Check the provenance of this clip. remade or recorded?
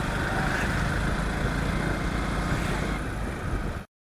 recorded